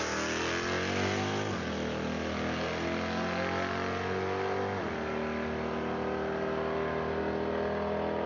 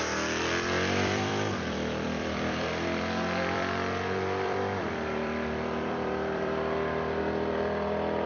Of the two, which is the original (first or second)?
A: first